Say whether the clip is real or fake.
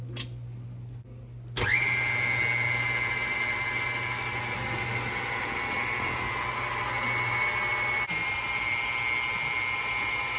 real